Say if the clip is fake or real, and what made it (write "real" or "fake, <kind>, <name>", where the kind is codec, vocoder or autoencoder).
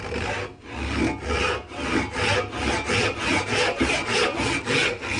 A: real